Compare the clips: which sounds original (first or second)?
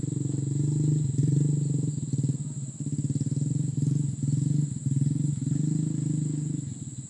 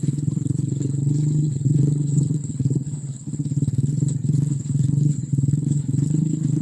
first